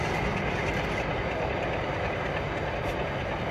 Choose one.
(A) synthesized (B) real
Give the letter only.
B